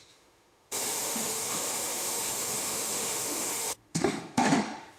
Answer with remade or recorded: remade